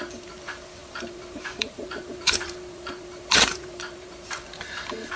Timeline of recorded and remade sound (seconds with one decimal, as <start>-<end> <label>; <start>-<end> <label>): 0.0-5.2 remade